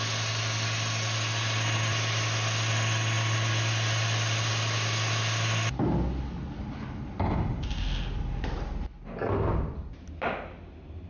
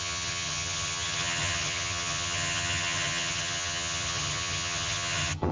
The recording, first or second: first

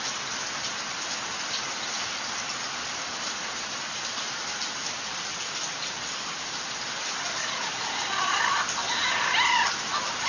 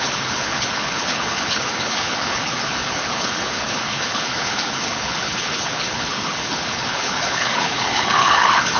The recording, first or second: first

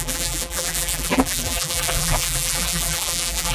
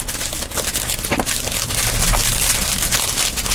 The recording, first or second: second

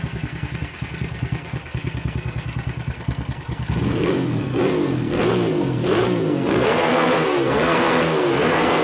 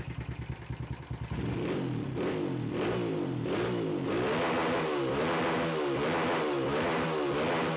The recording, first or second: second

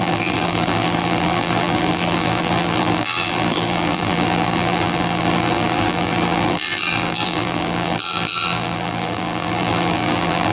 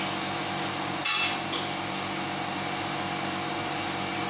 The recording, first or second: second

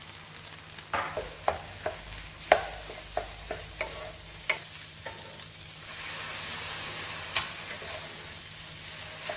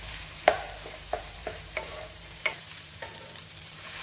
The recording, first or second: first